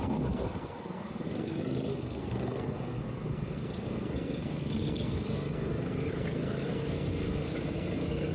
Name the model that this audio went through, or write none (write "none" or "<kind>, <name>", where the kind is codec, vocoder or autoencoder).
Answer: codec, SNAC